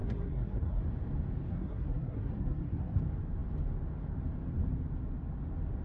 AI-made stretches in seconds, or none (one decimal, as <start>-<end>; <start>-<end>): 0.0-0.8; 1.5-3.0